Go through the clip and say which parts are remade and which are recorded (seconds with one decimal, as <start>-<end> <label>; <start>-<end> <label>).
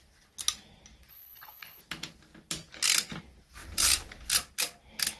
0.0-1.1 recorded; 1.1-1.8 remade; 1.8-5.2 recorded